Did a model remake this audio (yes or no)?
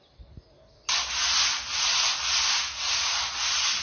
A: no